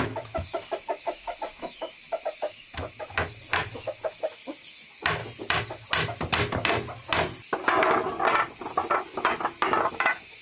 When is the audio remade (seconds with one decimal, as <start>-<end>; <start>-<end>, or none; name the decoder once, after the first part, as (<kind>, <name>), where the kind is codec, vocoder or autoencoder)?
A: 0.0-5.2 (autoencoder, DAC-VAE); 9.9-10.4